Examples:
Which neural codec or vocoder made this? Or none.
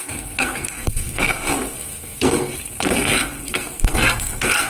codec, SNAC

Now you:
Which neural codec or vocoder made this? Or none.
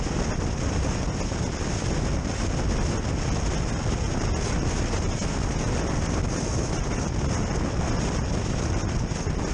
none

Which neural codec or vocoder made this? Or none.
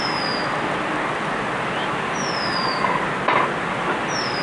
none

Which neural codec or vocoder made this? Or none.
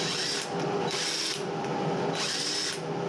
none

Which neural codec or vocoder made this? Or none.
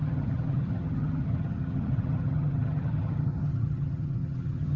vocoder, HiFi-GAN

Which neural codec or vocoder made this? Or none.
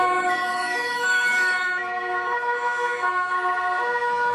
autoencoder, DAC-VAE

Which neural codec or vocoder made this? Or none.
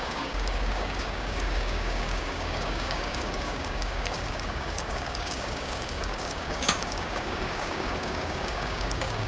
codec, DAC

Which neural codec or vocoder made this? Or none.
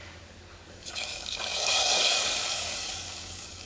codec, DAC